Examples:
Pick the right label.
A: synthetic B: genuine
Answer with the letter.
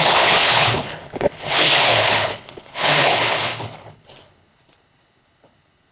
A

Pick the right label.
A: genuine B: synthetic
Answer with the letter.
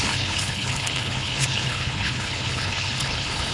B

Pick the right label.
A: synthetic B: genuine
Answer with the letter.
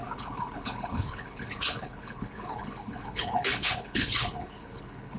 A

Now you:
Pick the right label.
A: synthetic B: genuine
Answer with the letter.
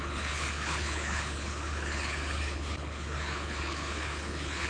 A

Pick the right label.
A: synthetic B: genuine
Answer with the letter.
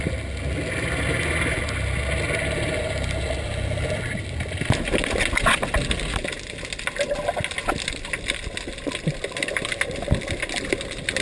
B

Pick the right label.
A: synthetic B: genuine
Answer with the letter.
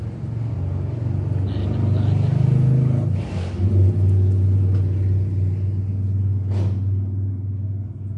B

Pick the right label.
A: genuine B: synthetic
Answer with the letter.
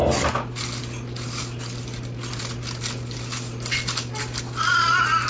A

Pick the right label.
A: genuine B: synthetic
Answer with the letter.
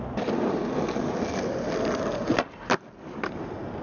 A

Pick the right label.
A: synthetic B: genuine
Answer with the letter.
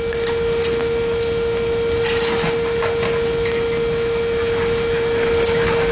B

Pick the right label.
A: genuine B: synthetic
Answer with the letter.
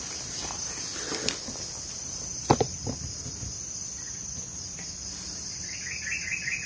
A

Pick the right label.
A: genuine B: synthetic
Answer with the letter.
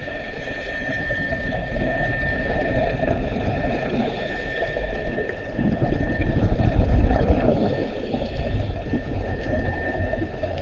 B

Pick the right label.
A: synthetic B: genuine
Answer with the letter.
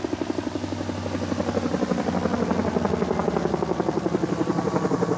B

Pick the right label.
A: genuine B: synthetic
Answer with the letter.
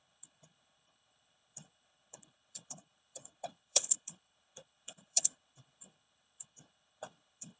B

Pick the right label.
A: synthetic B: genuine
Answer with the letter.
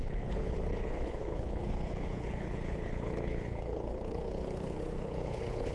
A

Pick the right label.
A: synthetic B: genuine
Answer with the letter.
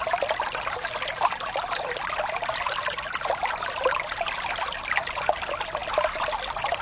B